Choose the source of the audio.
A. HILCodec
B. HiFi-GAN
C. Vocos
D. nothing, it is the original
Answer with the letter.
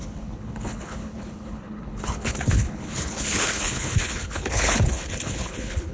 A